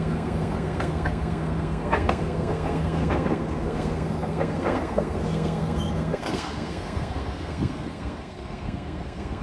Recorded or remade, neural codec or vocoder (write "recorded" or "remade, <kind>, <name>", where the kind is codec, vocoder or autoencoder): remade, codec, SNAC